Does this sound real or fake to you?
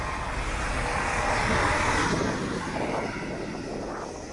real